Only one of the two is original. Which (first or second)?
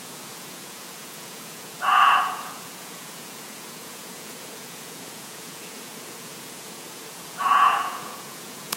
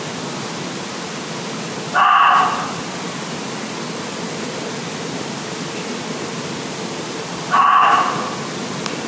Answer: second